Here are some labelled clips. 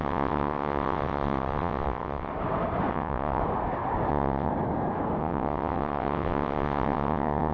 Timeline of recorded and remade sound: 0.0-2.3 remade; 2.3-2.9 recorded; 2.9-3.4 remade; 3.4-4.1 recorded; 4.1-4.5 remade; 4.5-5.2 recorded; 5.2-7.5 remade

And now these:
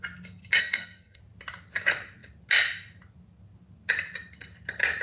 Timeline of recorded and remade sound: 0.0-0.6 recorded; 0.6-1.2 remade; 1.2-5.0 recorded

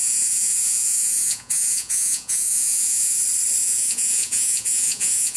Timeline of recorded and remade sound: 0.0-3.2 remade; 3.2-3.6 recorded; 3.6-5.4 remade

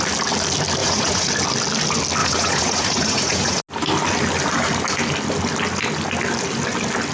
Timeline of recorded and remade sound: 0.0-0.8 recorded; 0.8-1.3 remade; 1.3-2.2 recorded; 2.2-3.6 remade; 3.6-7.1 recorded

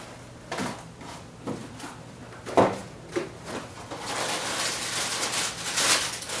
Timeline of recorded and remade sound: 0.0-1.6 recorded; 1.6-2.2 remade; 2.2-6.4 recorded

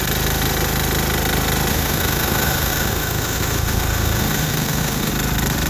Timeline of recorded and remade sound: 0.0-1.7 recorded; 1.7-5.1 remade; 5.1-5.7 recorded